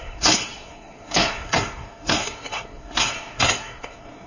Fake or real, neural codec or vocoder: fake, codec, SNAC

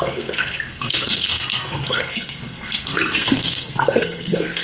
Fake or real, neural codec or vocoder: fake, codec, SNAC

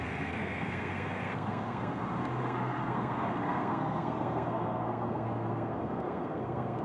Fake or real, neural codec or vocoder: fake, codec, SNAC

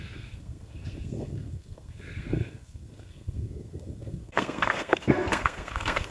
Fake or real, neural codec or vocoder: fake, codec, SNAC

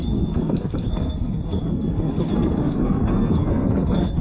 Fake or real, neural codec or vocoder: fake, codec, SNAC